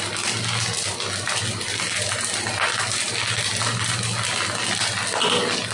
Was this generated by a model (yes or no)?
no